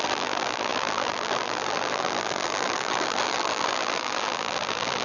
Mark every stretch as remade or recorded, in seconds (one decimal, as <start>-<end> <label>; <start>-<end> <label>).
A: 0.0-5.0 remade